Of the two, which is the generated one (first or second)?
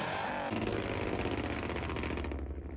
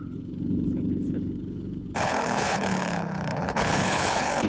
second